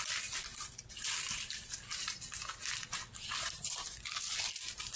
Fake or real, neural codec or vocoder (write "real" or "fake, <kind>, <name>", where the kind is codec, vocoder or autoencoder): real